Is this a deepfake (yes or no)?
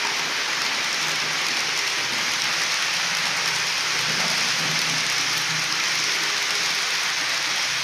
no